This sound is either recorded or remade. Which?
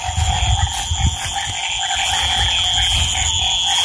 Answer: recorded